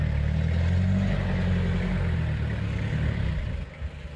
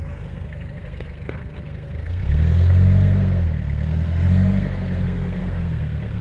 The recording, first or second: first